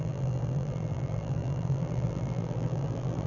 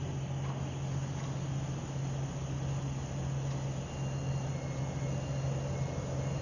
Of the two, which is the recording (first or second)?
second